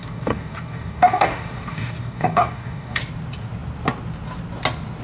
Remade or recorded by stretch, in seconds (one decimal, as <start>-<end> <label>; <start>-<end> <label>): 0.0-3.0 remade; 3.0-5.0 recorded